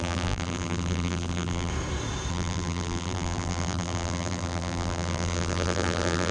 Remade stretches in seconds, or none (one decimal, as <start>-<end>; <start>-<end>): 0.0-1.7; 2.3-6.3